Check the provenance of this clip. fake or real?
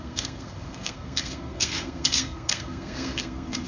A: fake